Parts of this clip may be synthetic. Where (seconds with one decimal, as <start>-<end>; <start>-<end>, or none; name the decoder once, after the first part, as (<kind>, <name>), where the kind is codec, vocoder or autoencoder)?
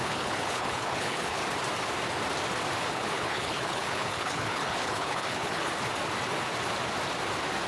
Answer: 0.0-1.4 (codec, HILCodec); 2.9-5.7